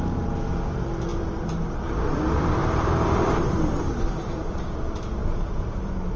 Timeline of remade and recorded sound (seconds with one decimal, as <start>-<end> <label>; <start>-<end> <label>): 0.0-1.1 recorded; 1.1-1.7 remade; 1.7-2.6 recorded; 2.6-4.6 remade; 4.6-5.2 recorded; 5.2-6.2 remade